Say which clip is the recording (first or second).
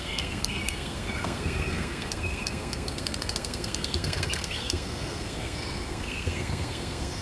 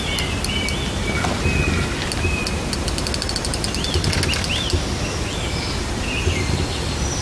second